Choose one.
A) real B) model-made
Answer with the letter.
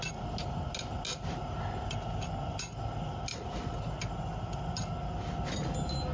A